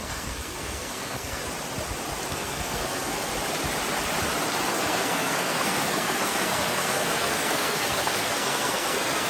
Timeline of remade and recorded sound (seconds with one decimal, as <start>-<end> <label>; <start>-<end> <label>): 0.0-1.4 remade; 1.4-2.3 recorded; 2.3-3.3 remade; 3.3-4.7 recorded; 4.7-9.3 remade